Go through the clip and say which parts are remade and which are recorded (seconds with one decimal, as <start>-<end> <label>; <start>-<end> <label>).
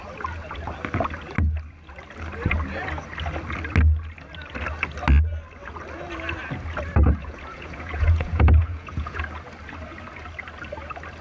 0.0-7.2 recorded; 7.2-9.2 remade; 9.2-11.2 recorded